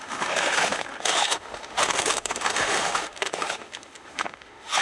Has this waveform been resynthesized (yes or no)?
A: yes